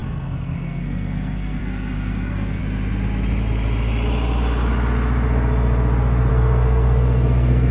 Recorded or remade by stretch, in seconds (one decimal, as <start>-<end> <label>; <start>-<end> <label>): 0.0-2.6 remade; 2.6-6.3 recorded; 6.3-7.7 remade